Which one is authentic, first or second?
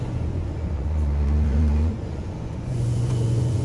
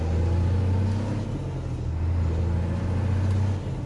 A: second